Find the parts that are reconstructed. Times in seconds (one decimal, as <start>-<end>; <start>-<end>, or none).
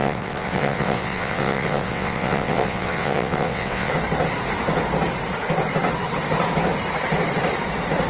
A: 0.0-3.9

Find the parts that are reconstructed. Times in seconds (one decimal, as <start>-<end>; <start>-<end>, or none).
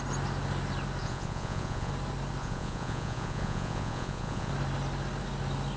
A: 1.0-1.9; 2.4-4.5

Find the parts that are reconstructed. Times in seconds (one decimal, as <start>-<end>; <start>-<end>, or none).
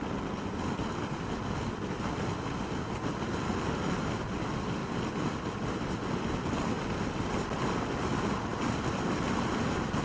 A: none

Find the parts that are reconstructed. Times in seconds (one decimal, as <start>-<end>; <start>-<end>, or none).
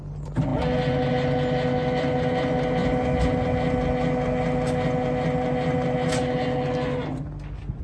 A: none